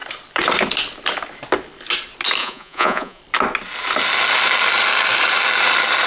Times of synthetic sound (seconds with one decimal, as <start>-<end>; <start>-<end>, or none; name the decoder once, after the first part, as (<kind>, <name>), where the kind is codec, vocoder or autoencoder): 2.4-3.2 (vocoder, Vocos)